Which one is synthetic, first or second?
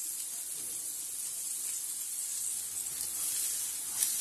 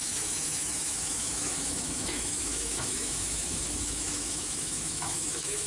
second